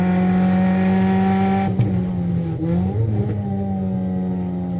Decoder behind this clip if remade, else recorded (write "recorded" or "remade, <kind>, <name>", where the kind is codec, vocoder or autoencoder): recorded